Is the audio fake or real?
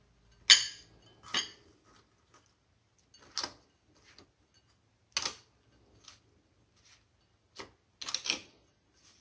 real